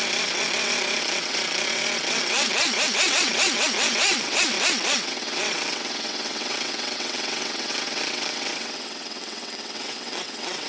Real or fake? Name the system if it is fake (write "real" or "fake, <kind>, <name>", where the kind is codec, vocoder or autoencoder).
fake, vocoder, WaveNeXt